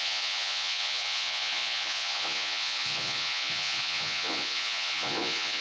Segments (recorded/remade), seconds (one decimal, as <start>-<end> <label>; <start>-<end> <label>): 0.0-5.6 remade